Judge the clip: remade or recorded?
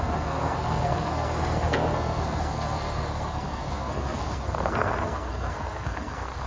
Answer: remade